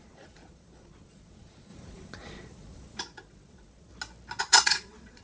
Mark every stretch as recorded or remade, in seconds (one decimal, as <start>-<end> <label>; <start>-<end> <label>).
0.0-3.9 remade; 3.9-4.4 recorded; 4.4-5.2 remade